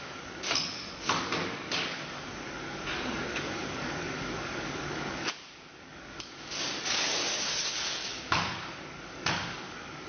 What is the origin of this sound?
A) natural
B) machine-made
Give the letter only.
B